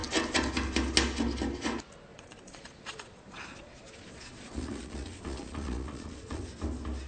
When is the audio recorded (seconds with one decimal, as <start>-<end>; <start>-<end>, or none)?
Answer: 0.0-2.1; 6.4-7.1